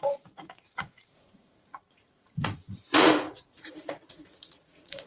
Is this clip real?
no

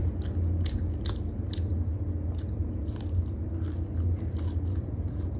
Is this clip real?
yes